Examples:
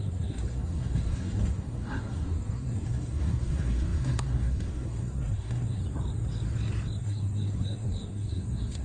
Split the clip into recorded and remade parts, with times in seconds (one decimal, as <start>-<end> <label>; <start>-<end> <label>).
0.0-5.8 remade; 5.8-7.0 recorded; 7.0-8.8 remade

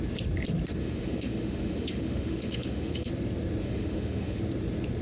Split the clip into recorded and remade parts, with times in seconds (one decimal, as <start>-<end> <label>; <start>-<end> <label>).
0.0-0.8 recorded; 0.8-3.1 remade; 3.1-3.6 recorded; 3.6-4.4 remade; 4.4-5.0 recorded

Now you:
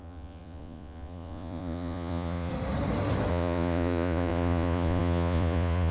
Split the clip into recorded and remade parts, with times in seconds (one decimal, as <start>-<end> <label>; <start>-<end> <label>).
0.0-2.5 remade; 2.5-3.3 recorded; 3.3-5.9 remade

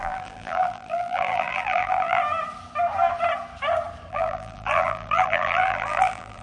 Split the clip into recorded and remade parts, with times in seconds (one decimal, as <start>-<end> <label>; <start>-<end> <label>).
0.0-2.2 remade; 2.2-4.1 recorded; 4.1-6.4 remade